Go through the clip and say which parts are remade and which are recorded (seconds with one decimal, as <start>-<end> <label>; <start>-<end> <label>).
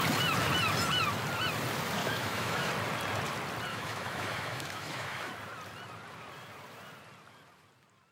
0.0-2.0 recorded; 2.0-2.7 remade; 2.7-3.7 recorded; 3.7-5.3 remade; 5.3-8.1 recorded